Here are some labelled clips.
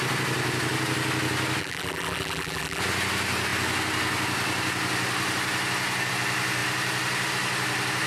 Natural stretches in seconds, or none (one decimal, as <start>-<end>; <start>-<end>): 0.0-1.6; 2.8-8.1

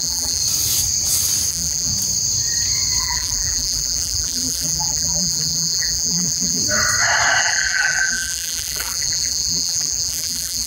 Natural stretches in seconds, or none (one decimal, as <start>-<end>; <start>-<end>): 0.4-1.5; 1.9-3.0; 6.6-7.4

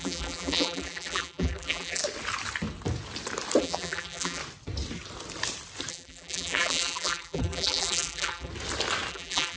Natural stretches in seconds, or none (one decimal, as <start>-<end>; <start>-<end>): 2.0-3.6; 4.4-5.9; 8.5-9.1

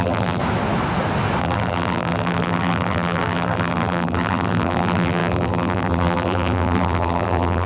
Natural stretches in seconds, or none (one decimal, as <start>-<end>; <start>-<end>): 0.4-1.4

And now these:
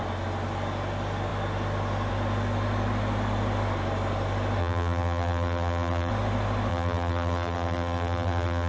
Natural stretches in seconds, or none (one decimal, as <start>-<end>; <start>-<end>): 0.0-4.6; 6.1-6.7

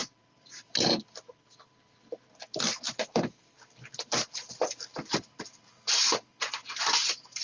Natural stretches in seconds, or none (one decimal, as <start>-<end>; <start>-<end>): 3.4-4.3